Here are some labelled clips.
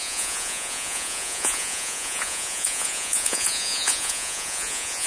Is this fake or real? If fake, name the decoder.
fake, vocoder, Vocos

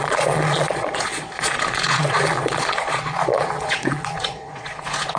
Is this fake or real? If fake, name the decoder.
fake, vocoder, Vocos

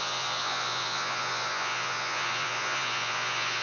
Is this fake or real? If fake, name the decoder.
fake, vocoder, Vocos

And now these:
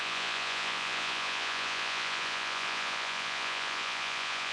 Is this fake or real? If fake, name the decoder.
fake, vocoder, Vocos